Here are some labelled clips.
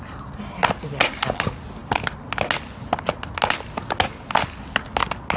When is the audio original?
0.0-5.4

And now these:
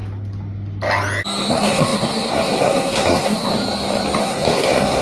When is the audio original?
0.0-1.5; 3.5-4.2